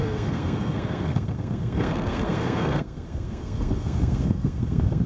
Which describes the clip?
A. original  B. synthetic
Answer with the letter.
B